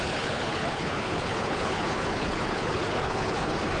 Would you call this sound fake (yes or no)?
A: yes